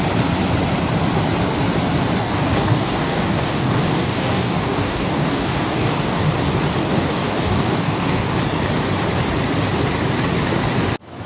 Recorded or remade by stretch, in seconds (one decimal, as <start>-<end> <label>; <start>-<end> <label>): 0.0-2.2 recorded; 2.2-6.3 remade; 6.3-6.8 recorded; 6.8-8.3 remade; 8.3-11.3 recorded